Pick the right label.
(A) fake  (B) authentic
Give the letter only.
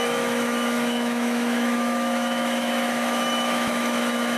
A